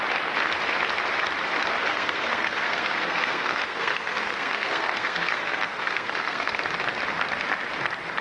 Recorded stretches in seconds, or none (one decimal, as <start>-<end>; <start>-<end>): 0.0-1.8; 6.6-8.2